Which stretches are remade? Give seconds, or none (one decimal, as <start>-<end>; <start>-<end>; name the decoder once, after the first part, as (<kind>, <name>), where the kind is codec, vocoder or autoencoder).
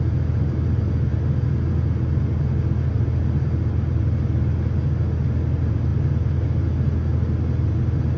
none